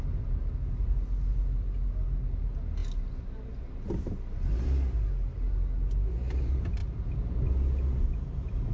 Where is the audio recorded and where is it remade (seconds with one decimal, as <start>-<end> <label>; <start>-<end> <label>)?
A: 0.0-8.7 recorded